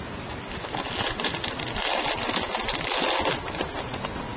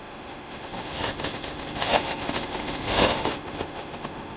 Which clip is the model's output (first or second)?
second